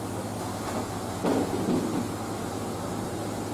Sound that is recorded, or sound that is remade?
recorded